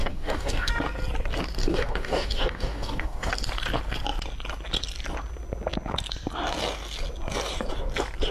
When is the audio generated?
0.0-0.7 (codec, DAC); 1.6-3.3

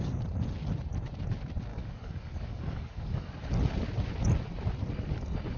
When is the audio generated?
1.7-3.3 (codec, DAC)

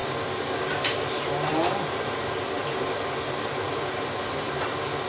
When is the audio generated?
0.0-0.7 (codec, DAC)

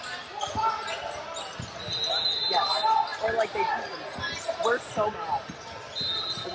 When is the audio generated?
none